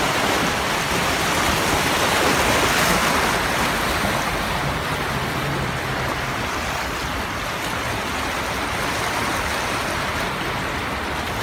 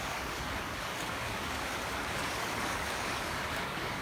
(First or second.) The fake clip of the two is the second